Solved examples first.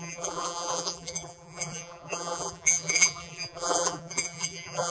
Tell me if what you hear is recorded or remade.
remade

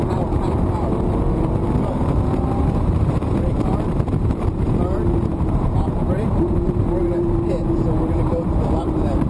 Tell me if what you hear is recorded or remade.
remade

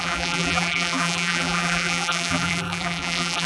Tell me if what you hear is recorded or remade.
remade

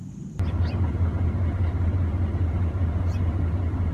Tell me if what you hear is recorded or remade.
recorded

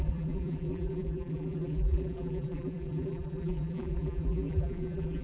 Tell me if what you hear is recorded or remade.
remade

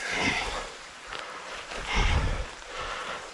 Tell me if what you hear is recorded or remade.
remade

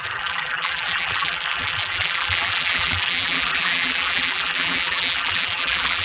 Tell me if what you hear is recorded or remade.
remade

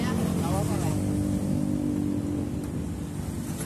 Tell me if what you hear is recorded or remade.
recorded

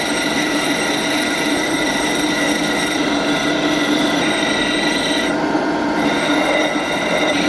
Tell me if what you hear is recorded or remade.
remade